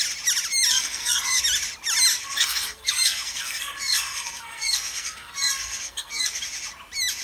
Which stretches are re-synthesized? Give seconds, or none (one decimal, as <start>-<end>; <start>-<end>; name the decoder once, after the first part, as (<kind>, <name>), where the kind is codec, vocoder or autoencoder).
0.7-1.4 (codec, SNAC); 2.1-6.4